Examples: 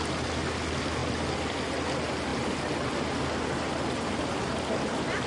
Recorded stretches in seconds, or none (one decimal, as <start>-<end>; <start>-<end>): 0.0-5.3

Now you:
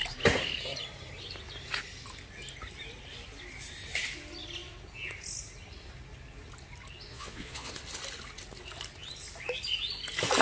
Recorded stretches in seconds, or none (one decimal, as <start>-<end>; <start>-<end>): 0.0-7.1; 7.7-10.4

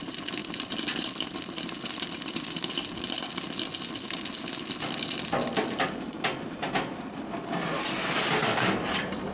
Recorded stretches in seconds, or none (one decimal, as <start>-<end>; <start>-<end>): 0.4-1.2; 2.8-7.1

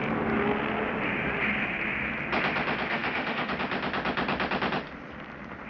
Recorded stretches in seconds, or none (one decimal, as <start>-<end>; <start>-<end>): 0.0-2.9; 3.5-5.7

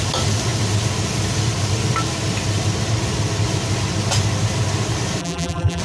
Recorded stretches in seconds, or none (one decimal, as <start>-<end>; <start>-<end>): 0.0-5.2

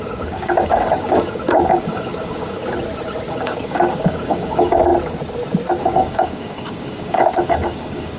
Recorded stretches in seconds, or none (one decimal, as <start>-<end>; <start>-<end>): 2.6-3.3; 4.9-5.8